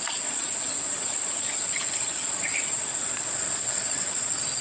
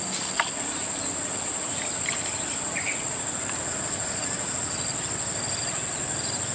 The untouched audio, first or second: second